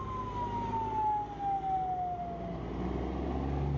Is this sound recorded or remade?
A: recorded